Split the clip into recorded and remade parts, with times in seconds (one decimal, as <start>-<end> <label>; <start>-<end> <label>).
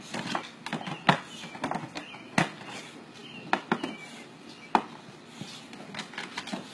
0.0-6.7 recorded